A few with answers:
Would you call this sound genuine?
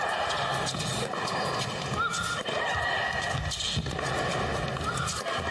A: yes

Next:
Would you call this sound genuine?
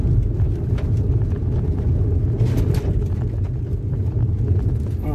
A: yes